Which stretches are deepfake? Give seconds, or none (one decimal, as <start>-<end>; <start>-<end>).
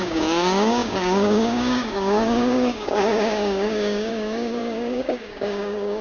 0.0-6.0